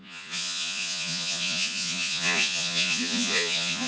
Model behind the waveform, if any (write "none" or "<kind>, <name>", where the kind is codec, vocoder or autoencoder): vocoder, Vocos